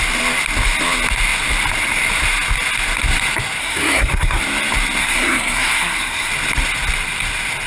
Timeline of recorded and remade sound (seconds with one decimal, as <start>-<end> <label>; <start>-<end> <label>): 0.0-3.6 recorded; 3.6-4.4 remade; 4.4-5.0 recorded; 5.0-6.3 remade; 6.3-7.7 recorded